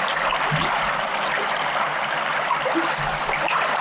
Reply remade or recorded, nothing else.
recorded